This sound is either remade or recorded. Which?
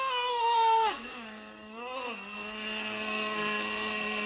remade